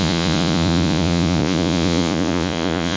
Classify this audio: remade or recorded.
remade